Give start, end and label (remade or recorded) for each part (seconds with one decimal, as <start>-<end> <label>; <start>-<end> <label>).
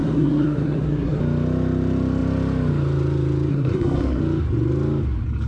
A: 0.0-1.2 remade; 1.2-3.5 recorded; 3.5-4.2 remade; 4.2-5.5 recorded